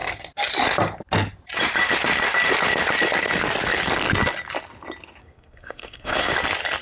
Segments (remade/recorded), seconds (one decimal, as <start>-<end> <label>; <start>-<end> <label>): 0.0-5.2 recorded; 5.2-6.3 remade; 6.3-6.8 recorded